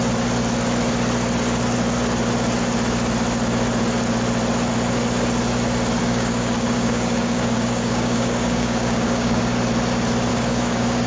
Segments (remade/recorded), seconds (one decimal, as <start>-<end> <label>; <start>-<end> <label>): 0.0-6.0 recorded; 6.0-9.4 remade; 9.4-10.3 recorded; 10.3-11.1 remade